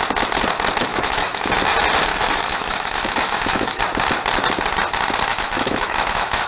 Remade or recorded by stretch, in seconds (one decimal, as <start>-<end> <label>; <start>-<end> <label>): 0.0-0.9 recorded; 0.9-1.5 remade; 1.5-2.1 recorded; 2.1-3.8 remade; 3.8-5.3 recorded; 5.3-6.5 remade